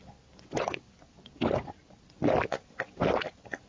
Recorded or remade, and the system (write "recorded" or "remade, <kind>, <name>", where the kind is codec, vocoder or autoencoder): recorded